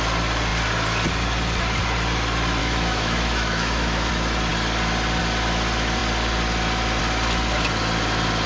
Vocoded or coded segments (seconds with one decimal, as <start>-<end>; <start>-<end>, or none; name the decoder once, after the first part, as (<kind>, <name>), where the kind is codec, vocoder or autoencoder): 2.6-4.1 (autoencoder, DAC-VAE)